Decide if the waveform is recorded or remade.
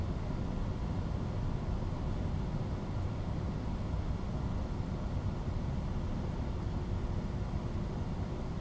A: recorded